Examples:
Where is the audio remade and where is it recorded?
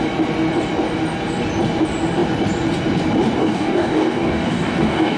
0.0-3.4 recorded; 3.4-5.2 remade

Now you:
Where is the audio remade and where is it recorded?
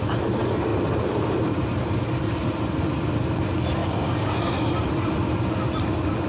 0.0-0.7 recorded; 0.7-2.8 remade; 2.8-3.8 recorded; 3.8-4.5 remade; 4.5-6.3 recorded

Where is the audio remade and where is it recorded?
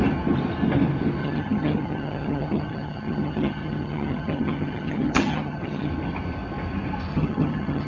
0.0-1.2 recorded; 1.2-5.9 remade; 5.9-7.1 recorded; 7.1-7.9 remade